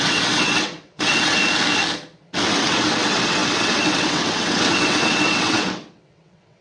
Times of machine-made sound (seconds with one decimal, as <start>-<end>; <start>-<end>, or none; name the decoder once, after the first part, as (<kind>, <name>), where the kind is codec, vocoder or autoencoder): 0.0-1.4 (vocoder, WaveNeXt); 2.6-6.6